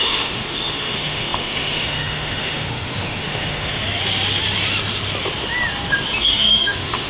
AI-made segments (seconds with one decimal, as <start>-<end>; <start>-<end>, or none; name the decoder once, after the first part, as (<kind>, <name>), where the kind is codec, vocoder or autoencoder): 0.0-3.8 (autoencoder, DAC-VAE); 6.2-7.1